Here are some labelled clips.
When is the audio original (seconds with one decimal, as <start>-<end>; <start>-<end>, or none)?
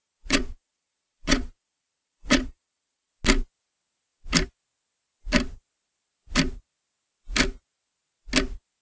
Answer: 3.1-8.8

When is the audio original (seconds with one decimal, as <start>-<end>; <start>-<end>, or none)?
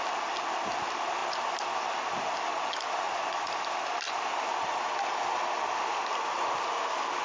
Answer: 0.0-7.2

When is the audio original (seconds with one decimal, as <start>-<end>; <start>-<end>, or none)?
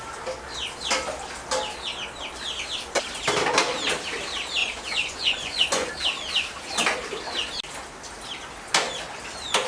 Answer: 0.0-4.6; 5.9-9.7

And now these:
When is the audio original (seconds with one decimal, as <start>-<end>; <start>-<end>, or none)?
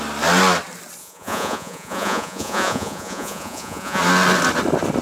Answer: 0.0-1.0; 4.0-5.0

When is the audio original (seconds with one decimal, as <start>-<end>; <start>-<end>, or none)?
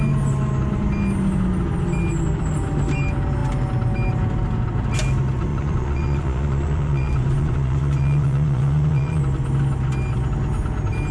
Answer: 0.0-5.5; 9.2-11.1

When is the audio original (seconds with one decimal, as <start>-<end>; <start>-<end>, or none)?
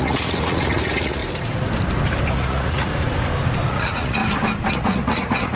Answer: 1.2-2.3; 2.9-3.7; 4.2-4.7